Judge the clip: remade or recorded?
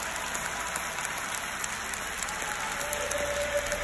recorded